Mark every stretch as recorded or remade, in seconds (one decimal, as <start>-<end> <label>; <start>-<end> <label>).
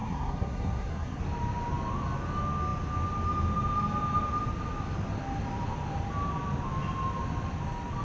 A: 0.0-1.2 remade; 1.2-8.0 recorded